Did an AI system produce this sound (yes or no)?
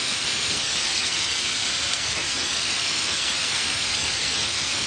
yes